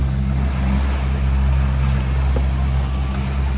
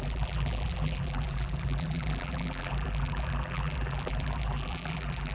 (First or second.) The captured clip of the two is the first